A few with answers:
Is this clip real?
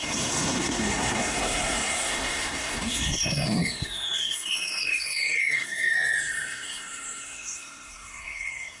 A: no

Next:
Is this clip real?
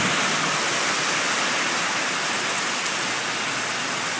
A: yes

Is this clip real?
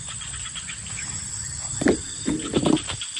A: yes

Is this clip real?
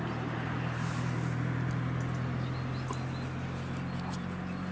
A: yes